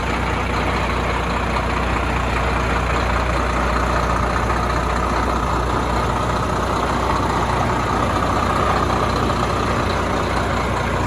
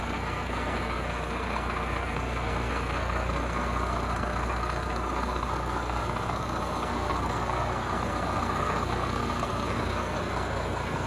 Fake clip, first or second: second